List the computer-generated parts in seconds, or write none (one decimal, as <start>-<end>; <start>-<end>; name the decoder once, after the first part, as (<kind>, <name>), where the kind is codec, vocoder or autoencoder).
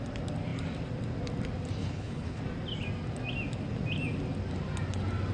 1.8-2.4 (codec, HILCodec)